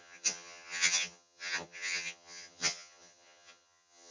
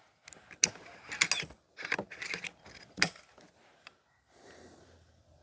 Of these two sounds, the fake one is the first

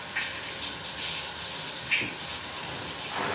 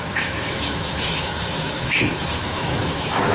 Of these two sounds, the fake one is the second